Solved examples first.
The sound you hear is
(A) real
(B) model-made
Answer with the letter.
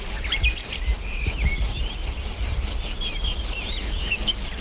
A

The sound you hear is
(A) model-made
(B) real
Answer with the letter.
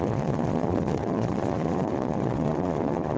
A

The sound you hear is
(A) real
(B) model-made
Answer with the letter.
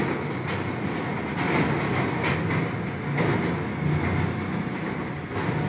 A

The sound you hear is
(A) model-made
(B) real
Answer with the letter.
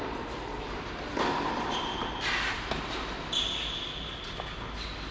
B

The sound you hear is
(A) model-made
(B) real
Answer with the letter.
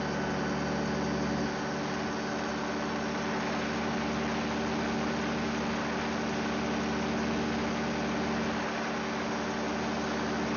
B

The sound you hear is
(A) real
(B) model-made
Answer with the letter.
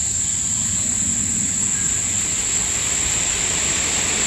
A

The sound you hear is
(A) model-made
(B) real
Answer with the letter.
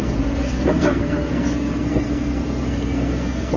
A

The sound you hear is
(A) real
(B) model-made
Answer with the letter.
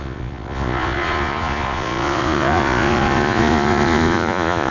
B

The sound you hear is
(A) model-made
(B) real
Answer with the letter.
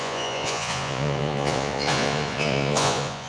A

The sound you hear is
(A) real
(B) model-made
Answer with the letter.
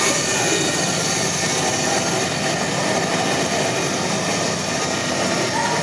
A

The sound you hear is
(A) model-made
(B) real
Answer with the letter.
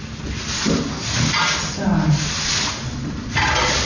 B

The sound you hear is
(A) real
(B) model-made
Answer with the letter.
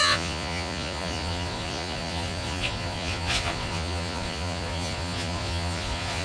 B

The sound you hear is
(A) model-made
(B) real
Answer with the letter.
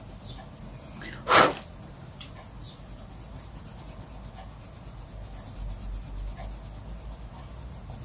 B